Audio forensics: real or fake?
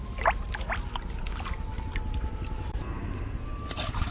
real